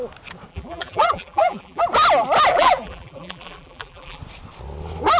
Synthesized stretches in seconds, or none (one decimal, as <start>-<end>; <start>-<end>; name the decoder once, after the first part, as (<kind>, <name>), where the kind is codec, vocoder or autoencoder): 0.5-1.8 (vocoder, BigVGAN v2); 2.5-4.2